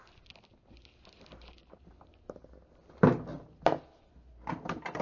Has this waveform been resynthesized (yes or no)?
no